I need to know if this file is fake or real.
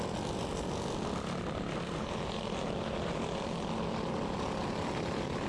real